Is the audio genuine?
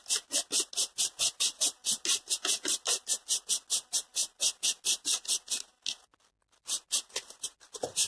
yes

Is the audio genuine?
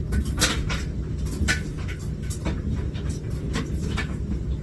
yes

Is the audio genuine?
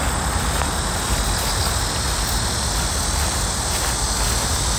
yes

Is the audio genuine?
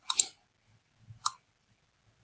yes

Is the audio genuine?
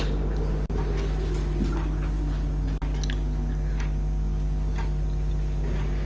yes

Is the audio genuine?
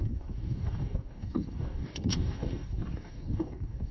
no